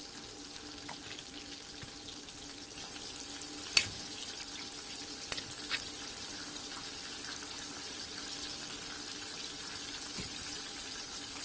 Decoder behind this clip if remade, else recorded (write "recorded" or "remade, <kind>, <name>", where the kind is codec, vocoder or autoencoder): recorded